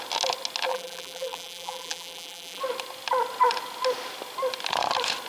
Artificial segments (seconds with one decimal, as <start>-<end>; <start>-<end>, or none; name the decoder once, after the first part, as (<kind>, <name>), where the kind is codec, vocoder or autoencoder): 0.7-2.6 (vocoder, BigVGAN v2)